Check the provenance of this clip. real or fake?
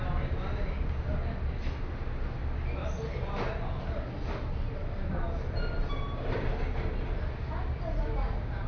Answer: real